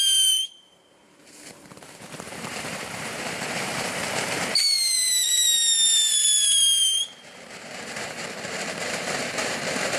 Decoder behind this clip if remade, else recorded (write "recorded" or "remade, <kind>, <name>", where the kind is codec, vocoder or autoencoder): remade, vocoder, BigVGAN v2